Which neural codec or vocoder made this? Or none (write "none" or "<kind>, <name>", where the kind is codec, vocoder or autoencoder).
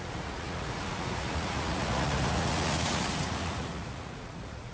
vocoder, Vocos